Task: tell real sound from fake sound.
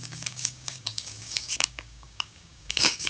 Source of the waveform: fake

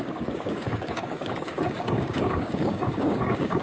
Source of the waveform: fake